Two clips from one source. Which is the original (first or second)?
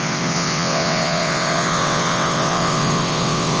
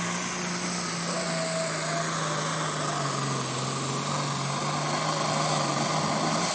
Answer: second